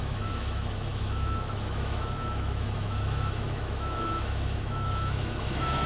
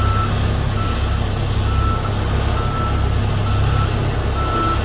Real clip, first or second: second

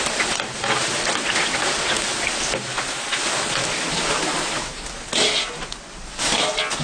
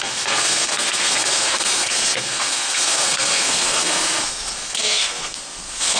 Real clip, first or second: first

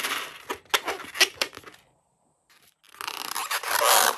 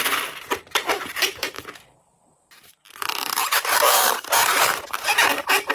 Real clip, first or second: first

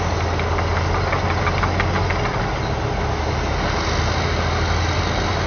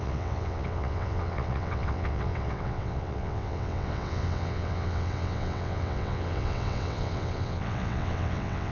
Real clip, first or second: first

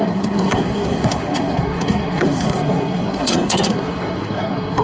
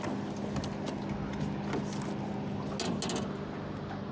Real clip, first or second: second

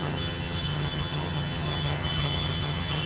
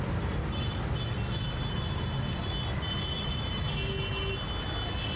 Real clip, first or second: second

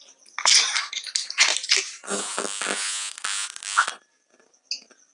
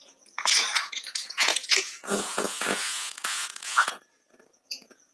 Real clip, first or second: first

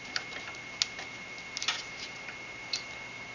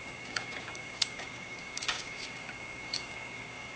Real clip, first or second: first